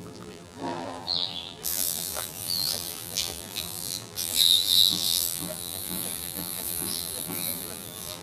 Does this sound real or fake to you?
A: fake